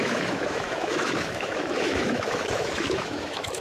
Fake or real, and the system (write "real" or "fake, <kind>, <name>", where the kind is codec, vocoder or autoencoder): fake, autoencoder, DAC-VAE